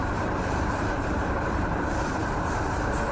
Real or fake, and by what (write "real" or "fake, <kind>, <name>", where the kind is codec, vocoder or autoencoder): fake, vocoder, BigVGAN v2